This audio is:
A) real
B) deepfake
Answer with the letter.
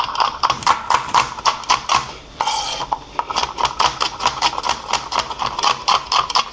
A